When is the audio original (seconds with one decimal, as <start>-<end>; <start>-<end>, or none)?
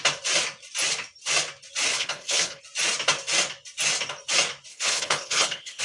0.0-1.9; 2.6-4.7